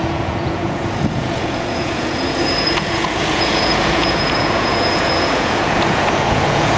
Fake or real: fake